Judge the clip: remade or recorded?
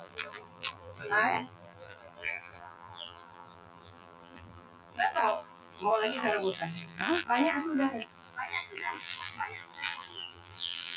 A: remade